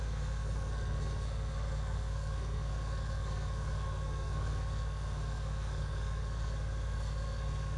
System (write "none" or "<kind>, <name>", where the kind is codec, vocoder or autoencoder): codec, SNAC